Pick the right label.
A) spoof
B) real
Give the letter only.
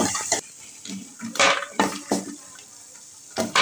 A